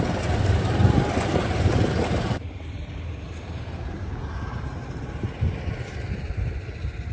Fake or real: fake